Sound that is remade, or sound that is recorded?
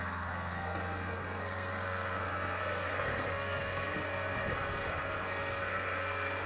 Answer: remade